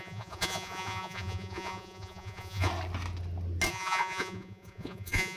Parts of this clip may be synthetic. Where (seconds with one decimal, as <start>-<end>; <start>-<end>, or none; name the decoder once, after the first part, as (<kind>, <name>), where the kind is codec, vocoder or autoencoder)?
0.0-2.7 (vocoder, Vocos); 3.7-5.4